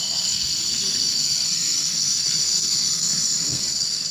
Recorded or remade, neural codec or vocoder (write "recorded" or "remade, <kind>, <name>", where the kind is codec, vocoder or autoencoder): remade, codec, SNAC